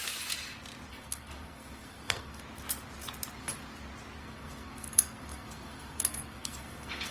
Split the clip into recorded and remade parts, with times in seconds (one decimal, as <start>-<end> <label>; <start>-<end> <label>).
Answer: 0.0-0.9 recorded; 0.9-2.4 remade; 2.4-4.2 recorded; 4.2-7.1 remade